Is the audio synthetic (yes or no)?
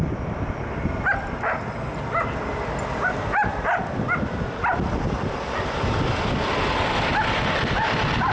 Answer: no